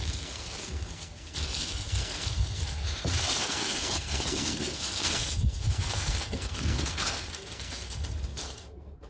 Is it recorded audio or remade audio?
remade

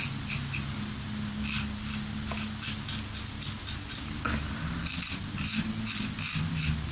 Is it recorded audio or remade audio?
recorded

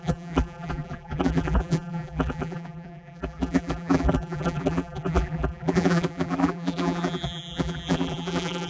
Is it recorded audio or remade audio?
remade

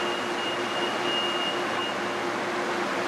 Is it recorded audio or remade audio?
recorded